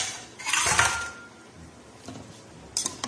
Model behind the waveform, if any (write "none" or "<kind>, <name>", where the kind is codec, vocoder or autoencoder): none